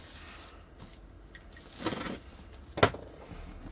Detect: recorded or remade recorded